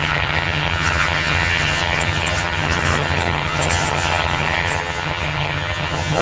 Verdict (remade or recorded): remade